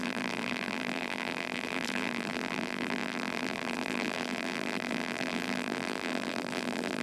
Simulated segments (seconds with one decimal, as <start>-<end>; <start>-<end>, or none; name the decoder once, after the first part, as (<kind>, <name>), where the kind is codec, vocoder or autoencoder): 0.0-7.0 (vocoder, BigVGAN v2)